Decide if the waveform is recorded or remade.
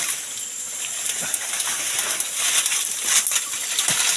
recorded